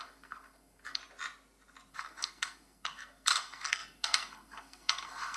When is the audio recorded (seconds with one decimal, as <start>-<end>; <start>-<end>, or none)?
1.0-1.9